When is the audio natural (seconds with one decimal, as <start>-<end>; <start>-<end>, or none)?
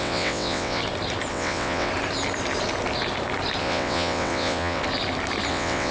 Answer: 0.8-1.3; 1.9-3.6; 4.8-5.5